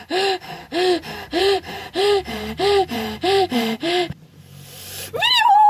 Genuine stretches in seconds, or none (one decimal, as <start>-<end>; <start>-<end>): 0.0-1.4; 4.3-5.7